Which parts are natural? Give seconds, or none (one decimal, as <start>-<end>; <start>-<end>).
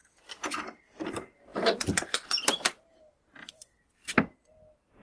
0.8-1.5; 3.9-5.0